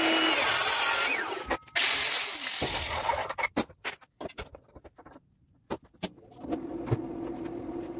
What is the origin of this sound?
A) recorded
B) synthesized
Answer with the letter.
A